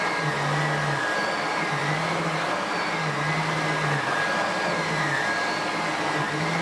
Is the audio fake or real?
real